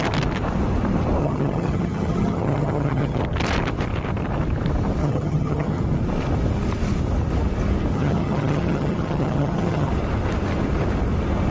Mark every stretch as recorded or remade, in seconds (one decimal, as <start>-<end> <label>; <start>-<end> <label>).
0.0-1.2 recorded; 1.2-3.2 remade; 3.2-5.0 recorded; 5.0-5.8 remade; 5.8-7.9 recorded; 7.9-9.9 remade; 9.9-11.5 recorded